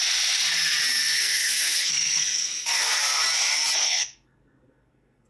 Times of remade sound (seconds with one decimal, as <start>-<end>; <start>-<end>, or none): 1.0-3.0; 3.8-5.3